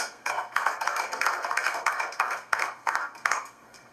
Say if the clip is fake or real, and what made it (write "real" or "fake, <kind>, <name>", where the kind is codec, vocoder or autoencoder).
fake, codec, SNAC